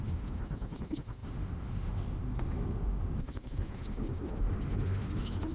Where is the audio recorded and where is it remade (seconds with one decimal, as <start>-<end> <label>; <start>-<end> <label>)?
0.0-5.5 remade